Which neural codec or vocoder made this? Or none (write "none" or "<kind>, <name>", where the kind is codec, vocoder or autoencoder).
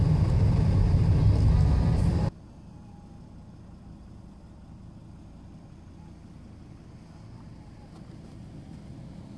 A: none